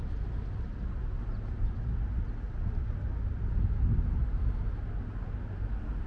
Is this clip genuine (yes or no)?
yes